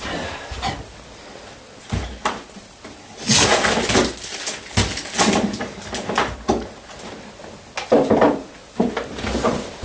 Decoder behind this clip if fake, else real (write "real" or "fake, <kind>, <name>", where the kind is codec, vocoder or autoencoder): real